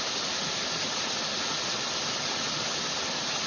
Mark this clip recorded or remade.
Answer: recorded